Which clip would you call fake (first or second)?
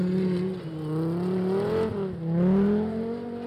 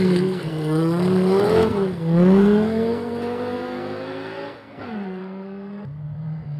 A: second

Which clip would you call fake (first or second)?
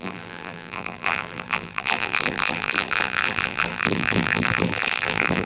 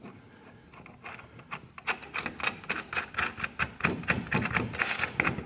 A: first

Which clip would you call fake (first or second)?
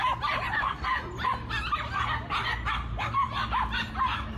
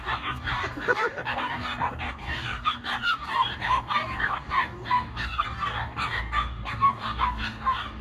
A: second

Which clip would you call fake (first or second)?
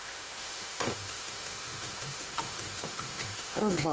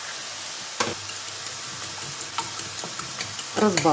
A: first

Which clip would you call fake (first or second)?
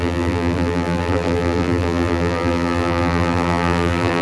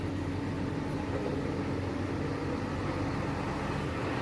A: first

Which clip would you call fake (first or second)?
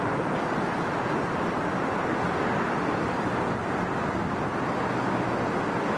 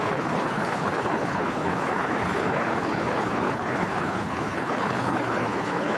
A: second